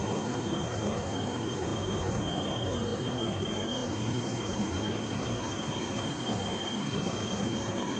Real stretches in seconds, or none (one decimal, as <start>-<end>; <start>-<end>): none